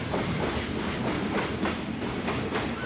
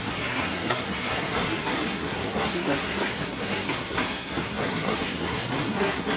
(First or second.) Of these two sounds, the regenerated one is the second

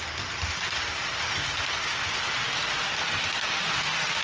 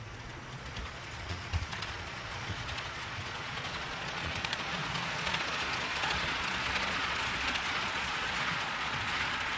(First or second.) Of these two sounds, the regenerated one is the second